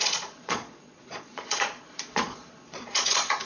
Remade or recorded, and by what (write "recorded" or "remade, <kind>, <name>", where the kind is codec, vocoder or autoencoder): remade, vocoder, Vocos